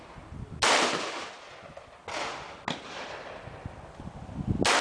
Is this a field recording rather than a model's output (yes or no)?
yes